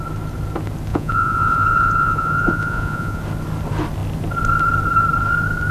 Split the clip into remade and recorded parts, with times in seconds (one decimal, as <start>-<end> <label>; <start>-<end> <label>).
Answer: 0.0-0.9 recorded; 0.9-3.2 remade; 3.2-5.7 recorded